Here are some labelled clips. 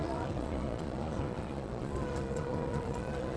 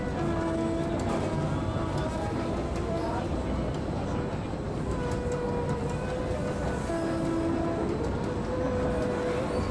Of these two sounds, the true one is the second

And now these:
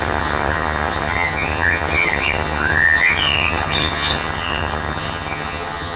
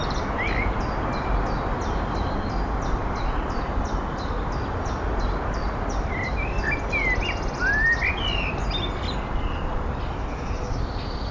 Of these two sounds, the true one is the second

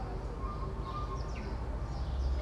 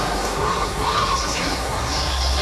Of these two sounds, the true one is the first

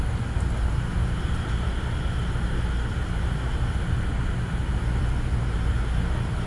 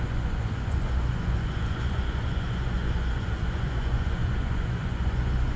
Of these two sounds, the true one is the first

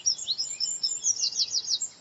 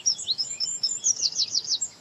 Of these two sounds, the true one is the first